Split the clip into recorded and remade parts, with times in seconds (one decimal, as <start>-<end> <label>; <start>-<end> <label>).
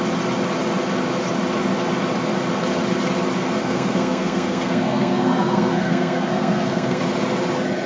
0.0-3.6 recorded; 3.6-7.0 remade; 7.0-7.9 recorded